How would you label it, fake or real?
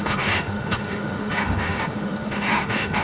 fake